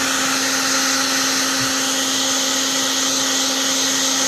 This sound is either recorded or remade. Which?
recorded